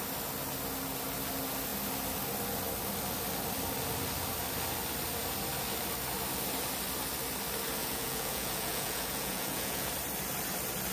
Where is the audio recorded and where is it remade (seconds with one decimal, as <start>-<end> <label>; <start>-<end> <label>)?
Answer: 0.0-7.8 recorded; 7.8-9.9 remade; 9.9-10.9 recorded

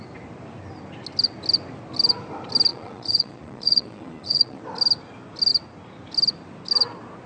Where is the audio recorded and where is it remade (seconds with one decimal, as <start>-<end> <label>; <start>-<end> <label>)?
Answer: 0.0-2.7 recorded; 2.7-4.6 remade; 4.6-7.3 recorded

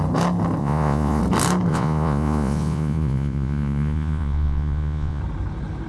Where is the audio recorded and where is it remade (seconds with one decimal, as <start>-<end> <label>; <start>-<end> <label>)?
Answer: 0.0-0.6 recorded; 0.6-1.2 remade; 1.2-1.7 recorded; 1.7-5.2 remade; 5.2-5.9 recorded

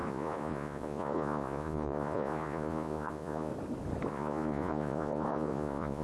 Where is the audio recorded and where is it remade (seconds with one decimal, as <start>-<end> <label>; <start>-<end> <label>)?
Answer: 0.0-3.5 remade; 3.5-4.1 recorded; 4.1-6.0 remade

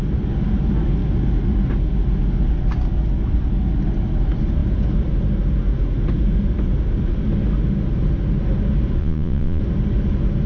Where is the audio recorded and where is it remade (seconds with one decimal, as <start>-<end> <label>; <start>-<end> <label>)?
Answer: 0.0-9.0 recorded; 9.0-9.6 remade; 9.6-10.5 recorded

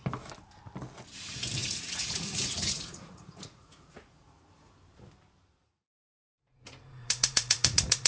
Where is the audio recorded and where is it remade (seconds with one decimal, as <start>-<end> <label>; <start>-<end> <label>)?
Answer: 0.0-1.6 recorded; 1.6-4.7 remade; 4.7-5.6 recorded; 5.6-8.1 remade

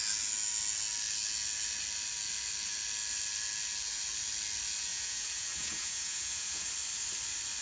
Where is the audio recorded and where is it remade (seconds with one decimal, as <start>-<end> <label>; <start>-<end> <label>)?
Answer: 0.0-4.9 recorded; 4.9-6.7 remade; 6.7-7.6 recorded

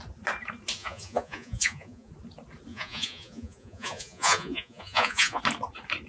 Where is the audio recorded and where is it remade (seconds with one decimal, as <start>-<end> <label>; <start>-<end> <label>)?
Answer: 0.0-0.8 recorded; 0.8-2.1 remade; 2.1-2.7 recorded; 2.7-5.4 remade; 5.4-6.1 recorded